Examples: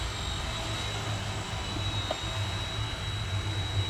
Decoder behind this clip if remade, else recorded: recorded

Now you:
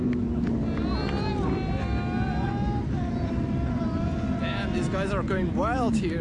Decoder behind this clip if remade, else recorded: recorded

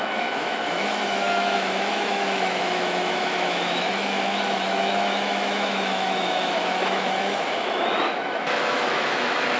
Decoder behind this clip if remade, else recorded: remade, autoencoder, DAC-VAE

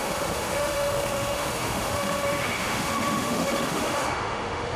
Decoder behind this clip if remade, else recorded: remade, autoencoder, DAC-VAE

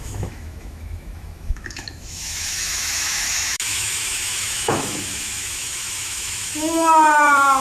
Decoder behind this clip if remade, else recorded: remade, autoencoder, DAC-VAE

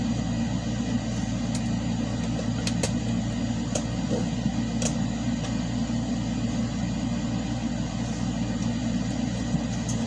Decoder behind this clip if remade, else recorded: recorded